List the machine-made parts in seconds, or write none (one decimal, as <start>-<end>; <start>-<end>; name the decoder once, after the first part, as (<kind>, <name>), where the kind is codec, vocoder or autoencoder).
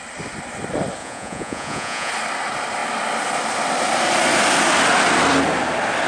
1.0-2.1 (vocoder, Vocos)